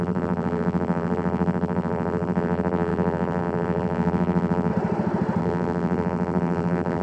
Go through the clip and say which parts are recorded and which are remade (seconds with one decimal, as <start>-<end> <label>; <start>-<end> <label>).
0.0-4.7 remade; 4.7-5.4 recorded; 5.4-7.0 remade